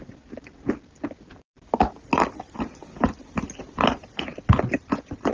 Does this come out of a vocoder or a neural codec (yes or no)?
no